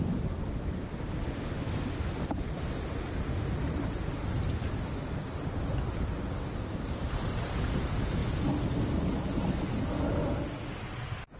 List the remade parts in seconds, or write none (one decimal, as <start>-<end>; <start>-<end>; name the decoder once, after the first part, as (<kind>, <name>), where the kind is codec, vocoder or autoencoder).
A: none